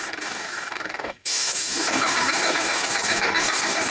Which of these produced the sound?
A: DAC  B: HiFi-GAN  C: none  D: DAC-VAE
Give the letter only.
A